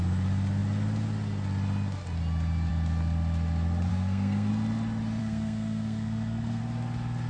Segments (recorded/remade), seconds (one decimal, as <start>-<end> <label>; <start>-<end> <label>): 0.0-3.9 recorded; 3.9-4.5 remade; 4.5-5.2 recorded; 5.2-6.6 remade; 6.6-7.3 recorded